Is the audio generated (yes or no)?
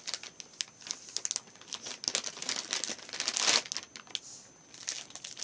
no